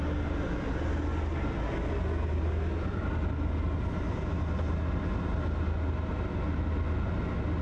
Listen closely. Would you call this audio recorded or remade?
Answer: recorded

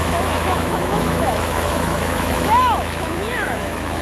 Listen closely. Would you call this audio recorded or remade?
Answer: remade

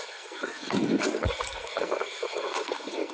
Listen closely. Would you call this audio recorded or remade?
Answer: remade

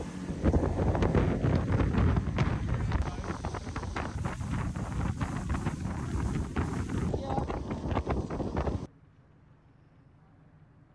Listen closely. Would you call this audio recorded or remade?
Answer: recorded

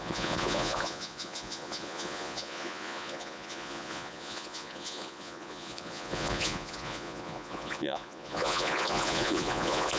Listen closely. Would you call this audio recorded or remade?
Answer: remade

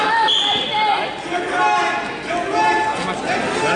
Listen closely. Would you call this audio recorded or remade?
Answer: recorded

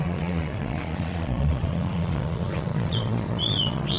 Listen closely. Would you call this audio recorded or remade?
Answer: remade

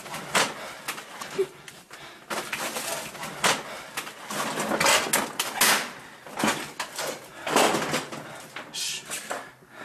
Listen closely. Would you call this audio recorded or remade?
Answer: recorded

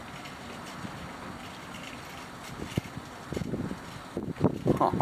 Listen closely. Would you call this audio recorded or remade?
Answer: recorded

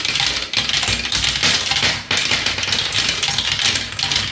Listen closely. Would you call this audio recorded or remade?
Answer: recorded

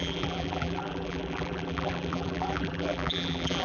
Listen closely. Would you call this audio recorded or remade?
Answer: remade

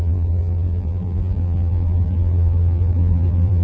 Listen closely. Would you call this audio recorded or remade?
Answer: remade